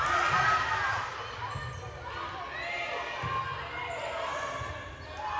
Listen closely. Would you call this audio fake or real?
real